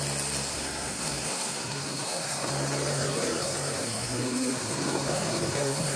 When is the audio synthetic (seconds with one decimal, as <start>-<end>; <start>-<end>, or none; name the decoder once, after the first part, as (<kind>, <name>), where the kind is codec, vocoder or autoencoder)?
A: 0.5-2.5 (codec, SNAC); 2.9-6.0